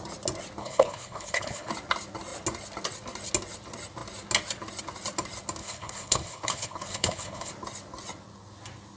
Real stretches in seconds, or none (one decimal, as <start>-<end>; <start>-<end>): 0.0-0.6; 1.7-5.6; 7.5-9.0